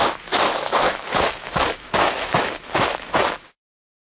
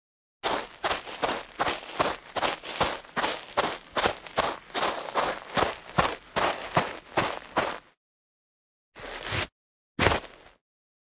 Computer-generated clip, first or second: first